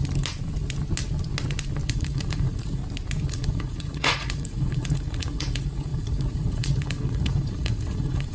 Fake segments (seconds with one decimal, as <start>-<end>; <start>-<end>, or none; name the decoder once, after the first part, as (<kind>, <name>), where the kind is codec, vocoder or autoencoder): 1.9-2.8 (vocoder, Vocos); 3.3-8.3